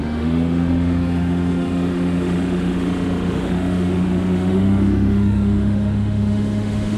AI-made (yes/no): yes